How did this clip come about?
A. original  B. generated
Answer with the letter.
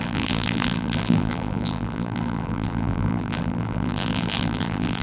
B